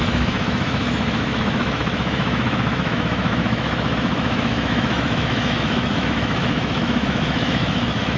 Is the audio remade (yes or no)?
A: yes